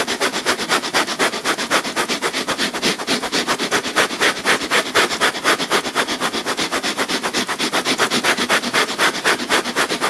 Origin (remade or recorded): recorded